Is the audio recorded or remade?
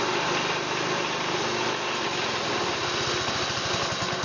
recorded